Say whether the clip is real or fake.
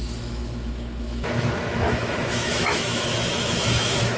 fake